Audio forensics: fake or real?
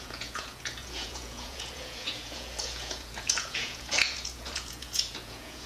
fake